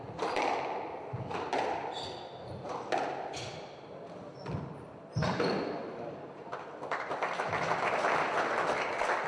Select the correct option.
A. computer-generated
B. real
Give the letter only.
B